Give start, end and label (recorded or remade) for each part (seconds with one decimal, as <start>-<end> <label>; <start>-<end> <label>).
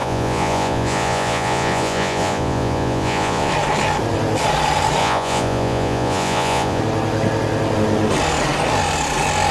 0.0-3.5 remade; 3.5-5.0 recorded; 5.0-6.8 remade; 6.8-9.5 recorded